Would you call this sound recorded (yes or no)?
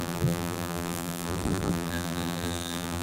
no